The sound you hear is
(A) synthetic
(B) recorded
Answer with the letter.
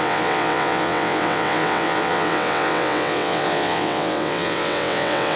A